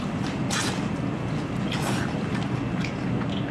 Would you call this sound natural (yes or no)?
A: yes